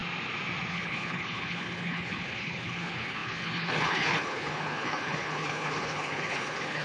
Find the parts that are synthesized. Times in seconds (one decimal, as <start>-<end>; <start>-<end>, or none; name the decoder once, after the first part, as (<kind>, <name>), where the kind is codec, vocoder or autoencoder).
0.7-6.8 (codec, HILCodec)